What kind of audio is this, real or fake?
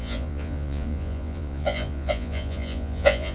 fake